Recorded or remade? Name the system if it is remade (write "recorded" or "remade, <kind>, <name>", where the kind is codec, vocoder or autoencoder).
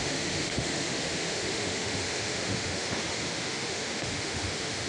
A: remade, autoencoder, DAC-VAE